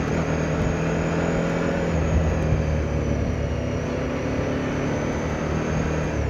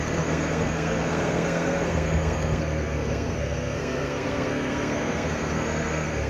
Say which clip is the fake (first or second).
second